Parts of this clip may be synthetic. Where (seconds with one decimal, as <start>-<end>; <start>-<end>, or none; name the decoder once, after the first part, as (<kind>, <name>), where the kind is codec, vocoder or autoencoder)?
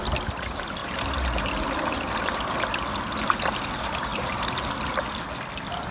4.1-5.2 (vocoder, BigVGAN v2)